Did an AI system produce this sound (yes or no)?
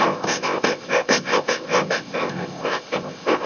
yes